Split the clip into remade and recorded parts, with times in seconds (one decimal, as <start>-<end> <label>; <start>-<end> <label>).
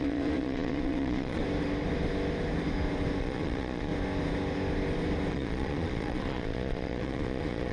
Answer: 0.0-1.4 remade; 1.4-3.2 recorded; 3.2-3.9 remade; 3.9-5.3 recorded; 5.3-7.7 remade